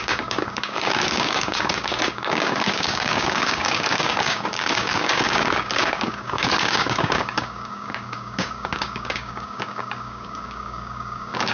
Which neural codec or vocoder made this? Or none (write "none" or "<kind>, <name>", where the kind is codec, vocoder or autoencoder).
codec, DAC